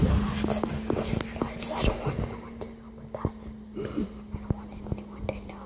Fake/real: real